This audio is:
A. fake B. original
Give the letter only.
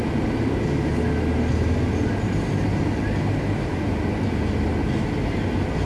B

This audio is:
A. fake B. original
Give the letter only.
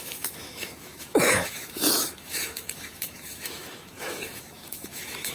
A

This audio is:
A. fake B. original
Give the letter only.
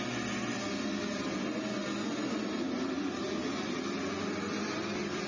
B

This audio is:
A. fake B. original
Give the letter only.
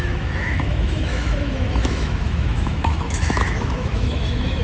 A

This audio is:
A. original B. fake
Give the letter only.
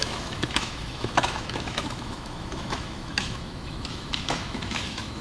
B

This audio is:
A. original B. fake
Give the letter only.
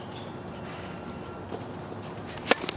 A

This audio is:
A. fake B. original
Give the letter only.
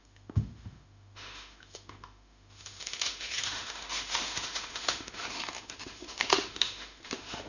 A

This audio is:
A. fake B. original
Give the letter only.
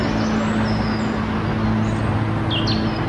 B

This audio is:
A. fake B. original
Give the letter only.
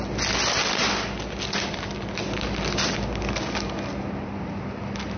B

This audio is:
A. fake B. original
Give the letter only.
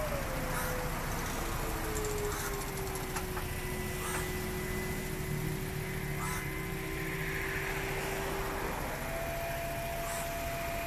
B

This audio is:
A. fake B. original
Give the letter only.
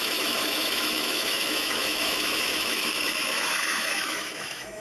A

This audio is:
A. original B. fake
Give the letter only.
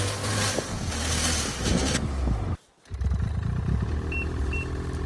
A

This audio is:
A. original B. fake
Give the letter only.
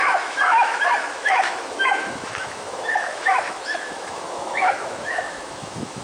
B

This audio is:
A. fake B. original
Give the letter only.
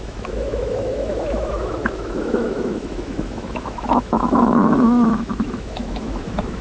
A